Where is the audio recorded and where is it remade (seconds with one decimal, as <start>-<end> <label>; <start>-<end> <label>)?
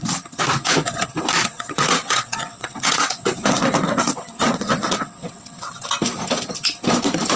0.0-1.5 recorded; 1.5-5.9 remade; 5.9-7.4 recorded